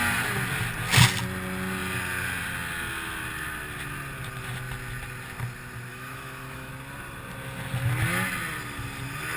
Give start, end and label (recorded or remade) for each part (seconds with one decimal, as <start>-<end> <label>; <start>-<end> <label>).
0.0-5.9 recorded; 5.9-6.7 remade; 6.7-9.4 recorded